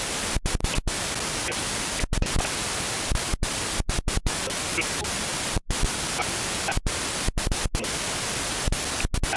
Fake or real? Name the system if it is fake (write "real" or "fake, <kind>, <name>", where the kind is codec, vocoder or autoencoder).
real